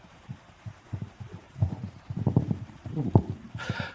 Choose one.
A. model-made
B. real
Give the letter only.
A